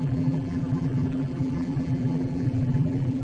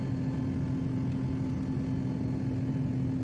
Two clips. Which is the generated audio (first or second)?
first